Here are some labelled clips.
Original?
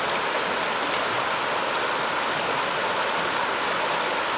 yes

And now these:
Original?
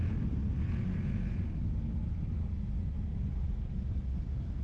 yes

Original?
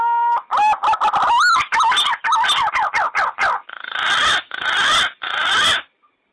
yes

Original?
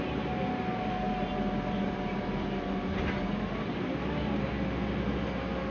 yes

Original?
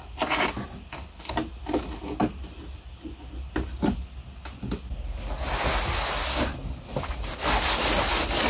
yes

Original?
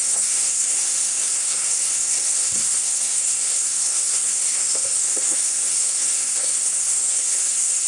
no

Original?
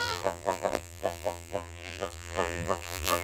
no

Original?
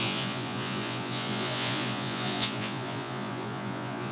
no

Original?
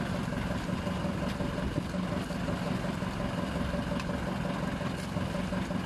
yes